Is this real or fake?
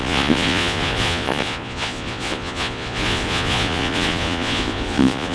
fake